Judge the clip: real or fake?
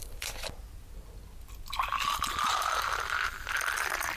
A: real